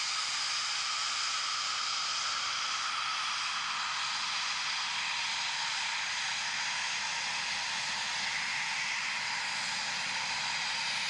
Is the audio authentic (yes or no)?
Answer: yes